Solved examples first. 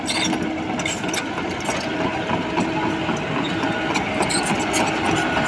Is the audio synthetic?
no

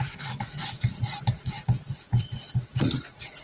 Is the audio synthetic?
yes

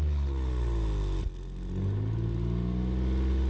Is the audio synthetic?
no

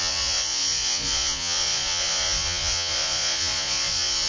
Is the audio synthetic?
yes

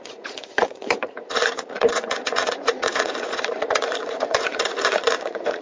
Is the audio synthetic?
yes